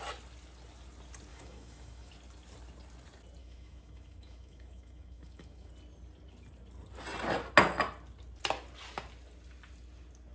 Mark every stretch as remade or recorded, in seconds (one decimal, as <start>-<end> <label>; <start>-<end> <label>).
0.0-1.3 recorded; 1.3-2.1 remade; 2.1-3.4 recorded; 3.4-5.7 remade; 5.7-10.3 recorded